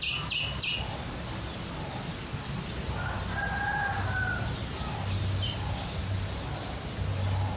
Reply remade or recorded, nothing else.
recorded